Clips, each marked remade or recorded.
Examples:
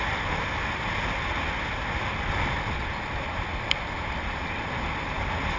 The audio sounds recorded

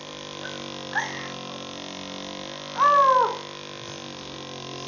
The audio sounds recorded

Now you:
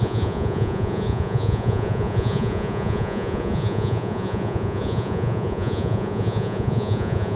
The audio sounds remade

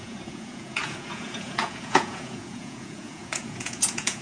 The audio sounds remade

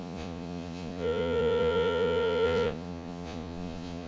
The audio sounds remade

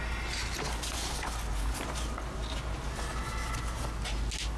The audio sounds recorded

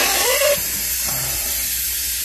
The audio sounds recorded